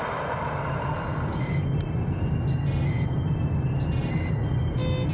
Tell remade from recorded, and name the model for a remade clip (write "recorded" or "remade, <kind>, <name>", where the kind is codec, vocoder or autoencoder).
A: recorded